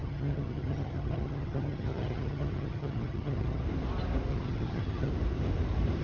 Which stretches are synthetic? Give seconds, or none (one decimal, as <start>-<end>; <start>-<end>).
0.0-3.6; 4.3-5.1